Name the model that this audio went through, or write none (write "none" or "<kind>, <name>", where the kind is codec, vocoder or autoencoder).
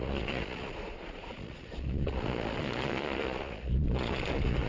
vocoder, Vocos